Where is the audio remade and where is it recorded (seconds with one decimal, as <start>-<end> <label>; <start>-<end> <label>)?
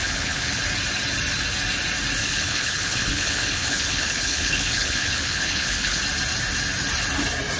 0.0-0.6 remade; 0.6-2.2 recorded; 2.2-6.0 remade; 6.0-7.6 recorded